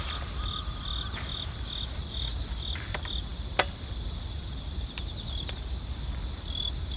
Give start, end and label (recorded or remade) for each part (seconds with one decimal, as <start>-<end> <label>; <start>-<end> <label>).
0.0-7.0 recorded

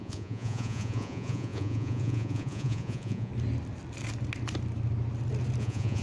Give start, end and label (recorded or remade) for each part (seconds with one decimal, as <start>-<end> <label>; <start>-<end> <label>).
0.0-3.3 remade; 3.3-5.6 recorded; 5.6-6.0 remade